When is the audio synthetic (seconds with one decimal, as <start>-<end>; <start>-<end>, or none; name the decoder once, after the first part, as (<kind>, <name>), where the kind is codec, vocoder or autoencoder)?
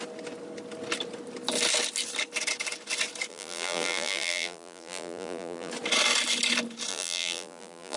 3.3-5.7 (vocoder, BigVGAN v2); 6.9-8.0